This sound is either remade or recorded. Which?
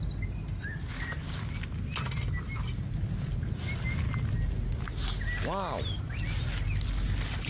recorded